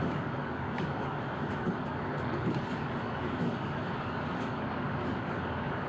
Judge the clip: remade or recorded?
remade